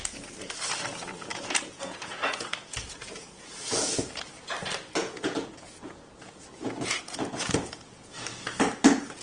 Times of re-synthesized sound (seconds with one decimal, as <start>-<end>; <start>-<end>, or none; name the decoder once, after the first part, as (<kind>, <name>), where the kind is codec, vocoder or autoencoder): 1.3-4.4 (vocoder, Vocos); 5.0-8.1